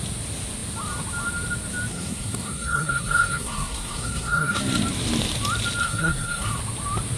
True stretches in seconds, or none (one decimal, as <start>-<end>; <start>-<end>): 0.0-1.9; 4.6-5.8; 6.6-7.2